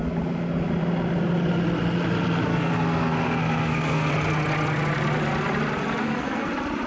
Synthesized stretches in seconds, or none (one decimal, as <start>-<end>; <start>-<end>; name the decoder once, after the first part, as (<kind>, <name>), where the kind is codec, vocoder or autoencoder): 2.5-4.1 (codec, SNAC); 6.0-6.5